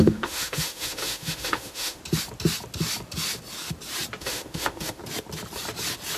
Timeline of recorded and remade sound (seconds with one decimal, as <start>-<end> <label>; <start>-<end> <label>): 0.0-2.0 remade; 2.0-4.2 recorded; 4.2-5.0 remade; 5.0-6.2 recorded

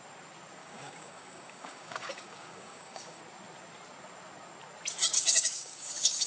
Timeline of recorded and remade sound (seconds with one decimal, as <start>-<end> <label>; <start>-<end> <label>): 0.0-0.6 recorded; 0.6-3.2 remade; 3.2-5.1 recorded; 5.1-6.3 remade